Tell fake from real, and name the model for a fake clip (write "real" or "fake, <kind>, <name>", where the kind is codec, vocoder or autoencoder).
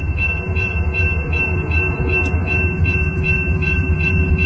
fake, vocoder, Vocos